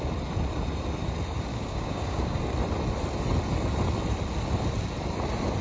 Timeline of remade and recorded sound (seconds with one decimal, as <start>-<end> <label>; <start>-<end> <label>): 0.0-1.5 recorded; 1.5-2.4 remade; 2.4-5.6 recorded